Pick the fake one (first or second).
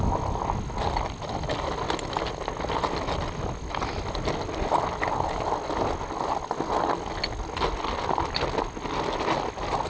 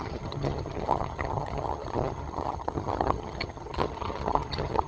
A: second